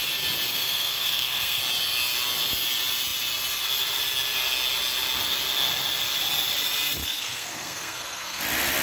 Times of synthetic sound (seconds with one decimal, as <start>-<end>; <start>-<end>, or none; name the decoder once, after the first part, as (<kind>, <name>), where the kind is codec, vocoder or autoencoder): 0.5-1.6 (codec, SNAC); 7.0-8.4